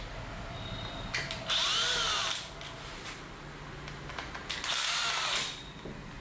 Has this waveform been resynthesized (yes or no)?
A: no